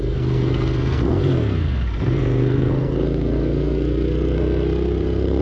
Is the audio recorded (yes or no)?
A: no